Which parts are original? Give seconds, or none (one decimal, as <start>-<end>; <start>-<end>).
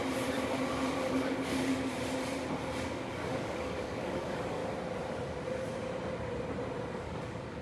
0.0-1.1; 1.9-2.9; 4.6-6.9